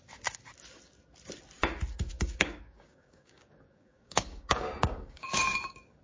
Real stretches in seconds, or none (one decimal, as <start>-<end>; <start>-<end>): 0.0-2.1